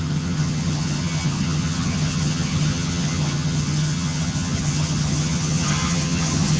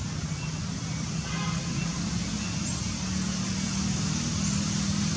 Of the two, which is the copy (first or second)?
first